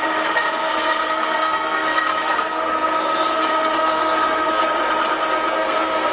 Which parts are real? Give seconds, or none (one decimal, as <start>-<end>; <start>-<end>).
4.6-5.5